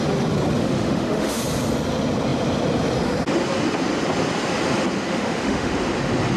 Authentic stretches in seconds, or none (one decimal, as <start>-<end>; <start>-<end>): 0.0-0.6; 1.4-5.1; 5.7-6.4